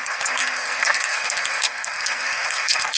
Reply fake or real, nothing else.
fake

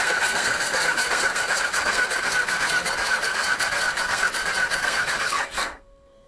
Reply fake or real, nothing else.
fake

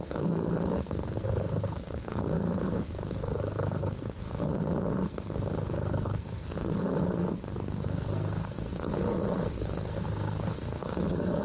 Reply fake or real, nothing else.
fake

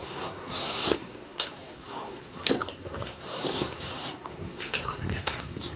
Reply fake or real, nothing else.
fake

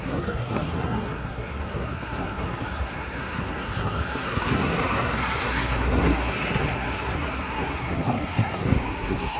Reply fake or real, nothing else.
fake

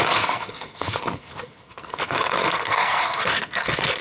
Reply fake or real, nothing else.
fake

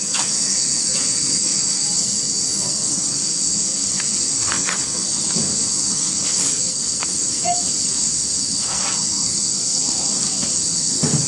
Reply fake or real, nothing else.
fake